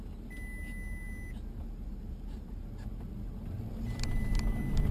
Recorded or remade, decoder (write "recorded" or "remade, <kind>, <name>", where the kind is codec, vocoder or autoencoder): recorded